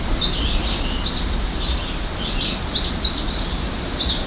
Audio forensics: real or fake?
real